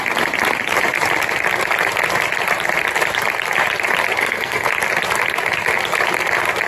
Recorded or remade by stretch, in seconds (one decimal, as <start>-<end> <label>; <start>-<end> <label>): 0.0-4.2 recorded; 4.2-4.7 remade; 4.7-6.7 recorded